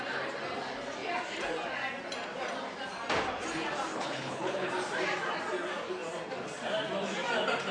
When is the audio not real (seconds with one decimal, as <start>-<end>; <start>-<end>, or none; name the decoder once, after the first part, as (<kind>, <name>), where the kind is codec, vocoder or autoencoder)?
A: 3.9-4.7 (codec, HILCodec)